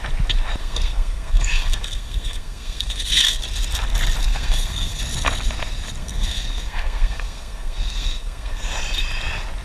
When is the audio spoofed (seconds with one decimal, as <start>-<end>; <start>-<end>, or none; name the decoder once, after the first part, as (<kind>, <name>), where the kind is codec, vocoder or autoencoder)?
0.6-3.4 (codec, SNAC); 4.2-5.0; 6.0-8.7